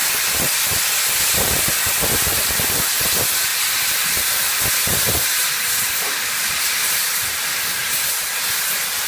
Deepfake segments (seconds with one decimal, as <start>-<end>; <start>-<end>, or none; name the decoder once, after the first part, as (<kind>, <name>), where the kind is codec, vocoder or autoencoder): 0.0-2.1 (vocoder, BigVGAN v2); 3.5-5.8